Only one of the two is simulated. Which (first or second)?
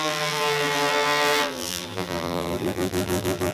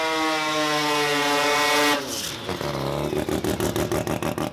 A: first